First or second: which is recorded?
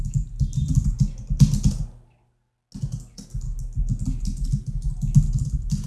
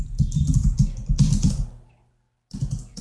first